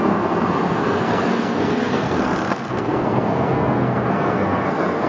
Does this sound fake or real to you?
fake